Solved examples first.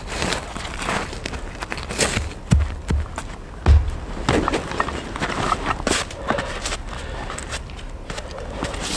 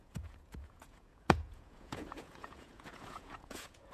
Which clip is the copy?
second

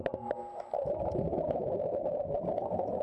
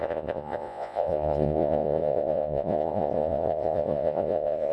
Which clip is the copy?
second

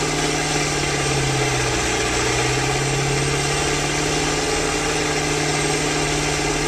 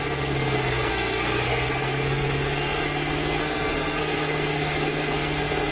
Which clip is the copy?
second